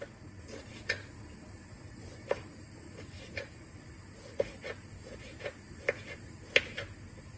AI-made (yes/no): no